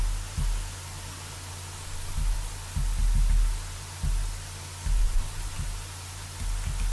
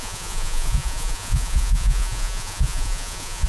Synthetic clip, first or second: second